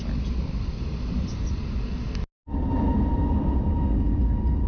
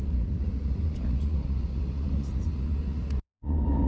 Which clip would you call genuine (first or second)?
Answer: first